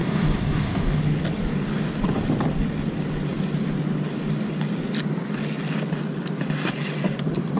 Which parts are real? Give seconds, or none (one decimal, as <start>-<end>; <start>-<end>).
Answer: 1.0-7.6